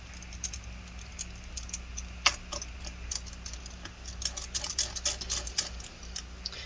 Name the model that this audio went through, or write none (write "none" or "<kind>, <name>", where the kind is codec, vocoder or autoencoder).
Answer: none